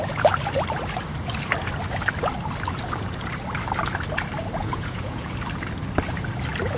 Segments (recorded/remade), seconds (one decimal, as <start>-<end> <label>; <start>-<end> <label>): 0.0-4.6 recorded; 4.6-5.3 remade; 5.3-6.8 recorded